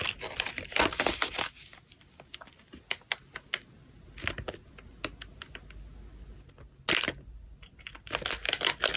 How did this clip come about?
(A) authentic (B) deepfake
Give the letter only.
A